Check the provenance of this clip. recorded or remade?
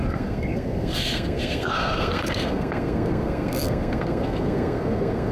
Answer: remade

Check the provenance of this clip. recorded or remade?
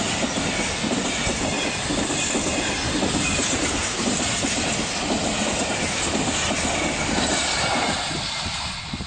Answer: recorded